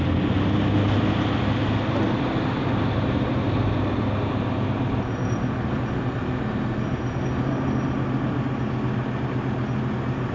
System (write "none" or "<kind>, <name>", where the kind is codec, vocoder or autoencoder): none